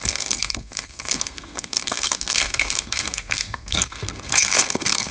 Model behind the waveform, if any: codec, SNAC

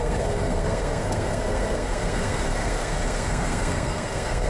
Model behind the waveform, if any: codec, SNAC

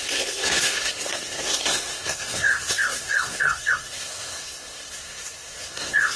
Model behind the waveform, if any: codec, SNAC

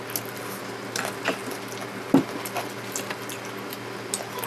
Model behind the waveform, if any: none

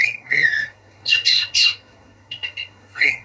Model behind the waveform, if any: codec, SNAC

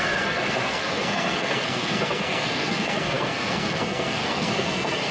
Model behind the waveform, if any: codec, SNAC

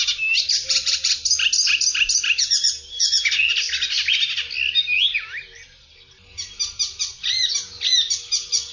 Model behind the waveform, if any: none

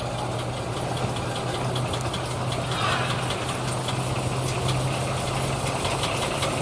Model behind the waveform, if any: none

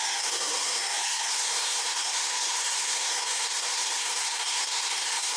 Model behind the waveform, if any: codec, SNAC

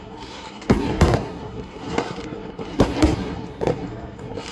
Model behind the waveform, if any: codec, SNAC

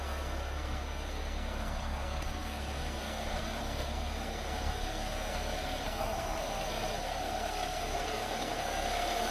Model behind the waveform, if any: codec, SNAC